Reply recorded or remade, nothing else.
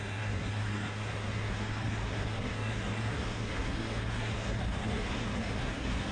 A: remade